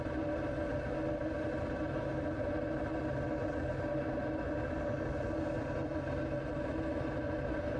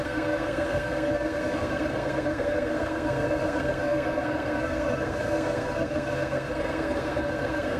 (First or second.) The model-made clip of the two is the second